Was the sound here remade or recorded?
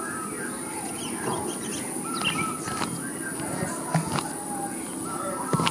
recorded